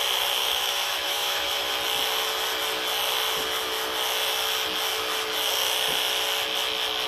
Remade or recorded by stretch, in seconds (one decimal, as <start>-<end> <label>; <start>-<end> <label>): 0.0-0.4 recorded; 0.4-1.7 remade; 1.7-7.1 recorded